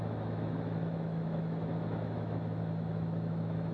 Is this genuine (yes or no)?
no